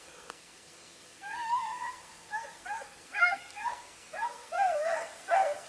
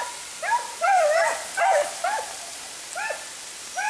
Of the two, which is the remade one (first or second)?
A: first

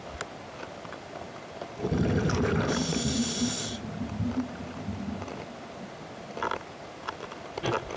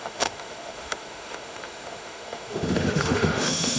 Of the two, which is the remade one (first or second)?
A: second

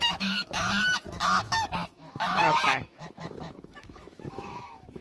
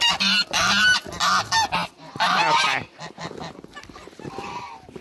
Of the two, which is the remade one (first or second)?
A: first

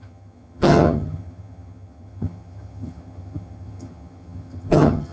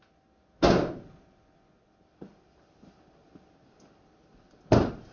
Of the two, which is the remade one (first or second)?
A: first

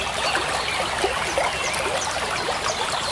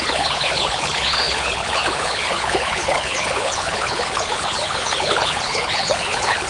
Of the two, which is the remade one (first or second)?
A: second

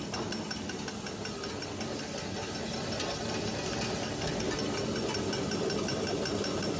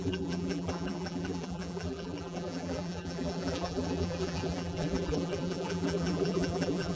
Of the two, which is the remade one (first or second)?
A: second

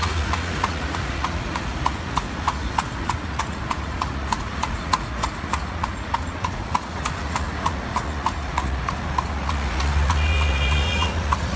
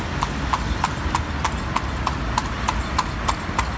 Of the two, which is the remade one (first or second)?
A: first